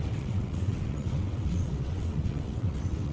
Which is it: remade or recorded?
remade